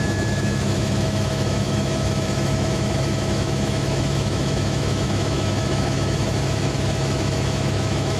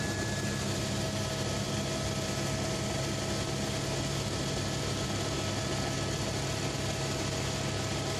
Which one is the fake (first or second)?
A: first